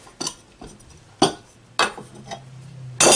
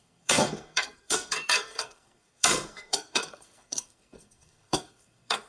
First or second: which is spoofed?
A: second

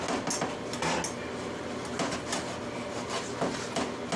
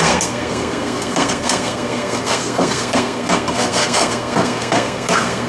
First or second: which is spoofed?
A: second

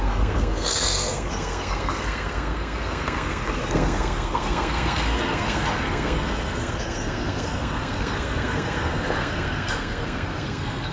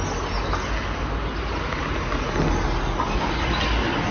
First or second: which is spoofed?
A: first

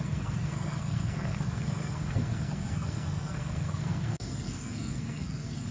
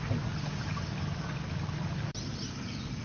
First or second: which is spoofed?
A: first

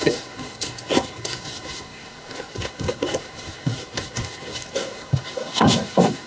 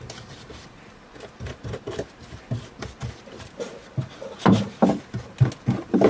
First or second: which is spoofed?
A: first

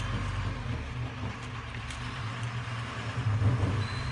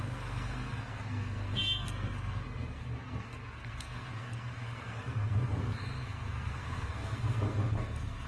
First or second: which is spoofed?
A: second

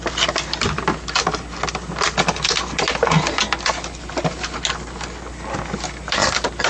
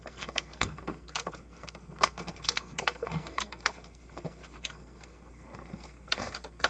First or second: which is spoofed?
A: second